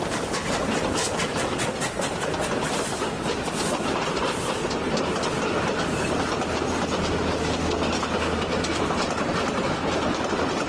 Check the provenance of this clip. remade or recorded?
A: recorded